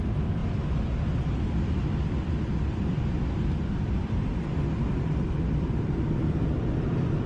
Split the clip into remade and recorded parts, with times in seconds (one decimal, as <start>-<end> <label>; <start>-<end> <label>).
0.0-7.3 remade